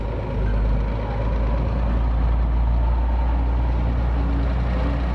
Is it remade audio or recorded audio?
recorded